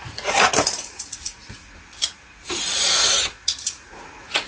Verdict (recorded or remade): remade